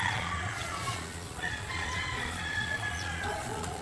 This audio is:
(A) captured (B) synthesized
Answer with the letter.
B